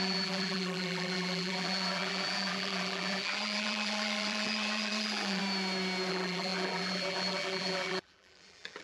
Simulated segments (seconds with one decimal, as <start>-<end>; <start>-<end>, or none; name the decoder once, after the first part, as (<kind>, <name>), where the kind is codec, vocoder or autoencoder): 0.0-5.4 (vocoder, BigVGAN v2); 6.1-8.8

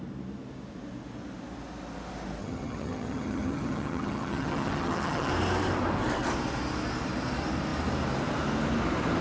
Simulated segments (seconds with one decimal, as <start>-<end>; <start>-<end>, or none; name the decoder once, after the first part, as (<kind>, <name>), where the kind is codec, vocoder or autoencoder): 2.4-5.3 (vocoder, HiFi-GAN)

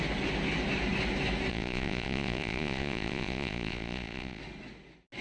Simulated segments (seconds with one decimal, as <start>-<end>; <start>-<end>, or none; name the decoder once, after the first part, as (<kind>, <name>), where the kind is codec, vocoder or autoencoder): 1.5-4.4 (vocoder, Vocos)

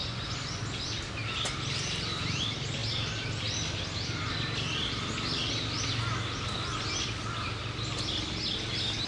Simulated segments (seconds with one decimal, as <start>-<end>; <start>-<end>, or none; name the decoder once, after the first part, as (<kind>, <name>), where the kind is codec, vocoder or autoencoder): 0.0-0.6 (vocoder, Vocos)